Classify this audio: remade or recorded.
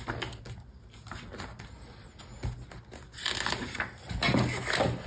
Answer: recorded